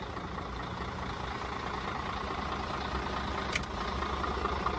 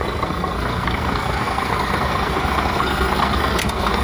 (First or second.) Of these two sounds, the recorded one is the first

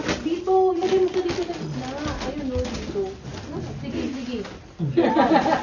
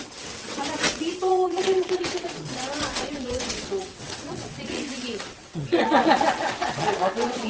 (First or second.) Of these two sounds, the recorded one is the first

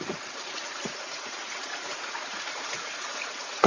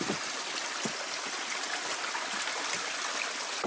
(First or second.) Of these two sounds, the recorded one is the second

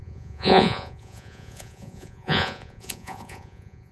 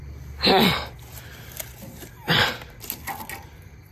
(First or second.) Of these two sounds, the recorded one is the second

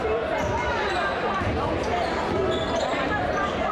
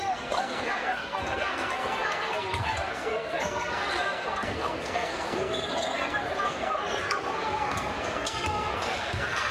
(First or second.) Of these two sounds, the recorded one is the first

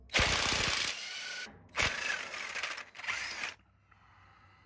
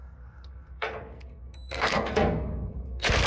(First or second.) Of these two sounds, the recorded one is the first